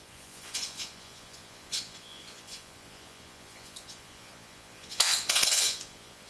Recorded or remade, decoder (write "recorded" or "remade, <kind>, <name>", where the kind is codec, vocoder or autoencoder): remade, vocoder, Vocos